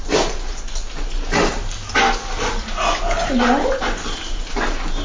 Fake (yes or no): no